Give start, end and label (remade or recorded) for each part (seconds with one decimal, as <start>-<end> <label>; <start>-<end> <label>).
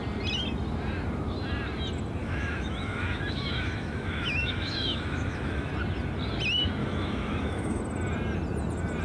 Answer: 0.0-2.2 recorded; 2.2-5.7 remade; 5.7-6.8 recorded; 6.8-7.8 remade; 7.8-9.0 recorded